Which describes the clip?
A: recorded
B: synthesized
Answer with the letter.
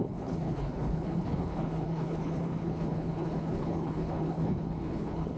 B